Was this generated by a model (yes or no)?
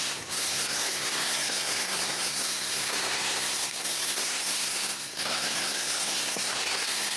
yes